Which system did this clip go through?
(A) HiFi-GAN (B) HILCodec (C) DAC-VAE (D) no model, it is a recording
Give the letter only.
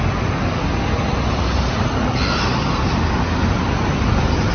D